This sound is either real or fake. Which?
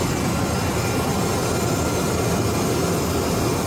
real